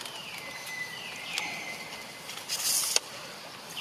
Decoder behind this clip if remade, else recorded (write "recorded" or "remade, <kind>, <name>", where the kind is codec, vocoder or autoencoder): recorded